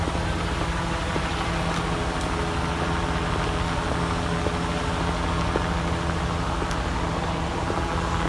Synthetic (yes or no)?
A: no